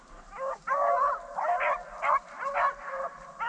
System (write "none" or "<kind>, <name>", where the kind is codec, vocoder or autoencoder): none